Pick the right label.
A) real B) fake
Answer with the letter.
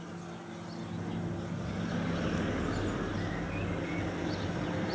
A